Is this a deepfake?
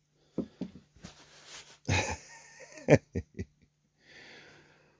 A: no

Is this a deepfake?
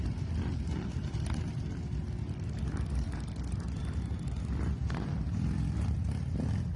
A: no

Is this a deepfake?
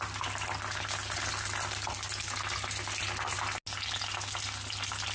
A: no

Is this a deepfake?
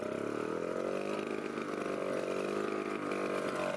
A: no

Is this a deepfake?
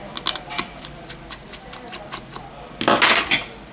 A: no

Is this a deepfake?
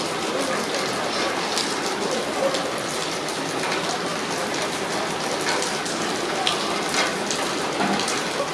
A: no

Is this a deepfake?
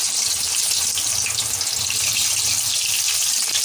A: no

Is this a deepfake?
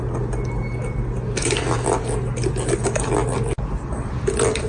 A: no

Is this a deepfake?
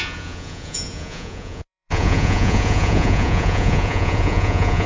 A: yes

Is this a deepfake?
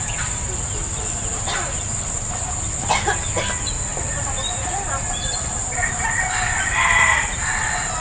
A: no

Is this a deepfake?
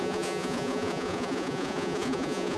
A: yes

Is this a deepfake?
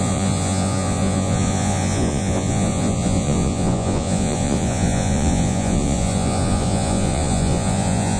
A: yes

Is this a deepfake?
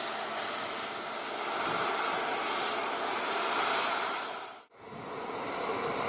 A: no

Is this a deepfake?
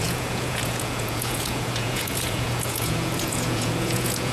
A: yes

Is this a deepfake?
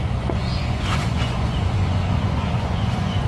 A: yes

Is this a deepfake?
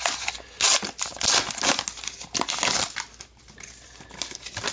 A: no